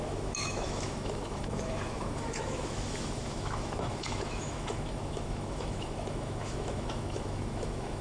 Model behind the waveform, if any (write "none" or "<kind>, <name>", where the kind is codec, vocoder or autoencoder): autoencoder, DAC-VAE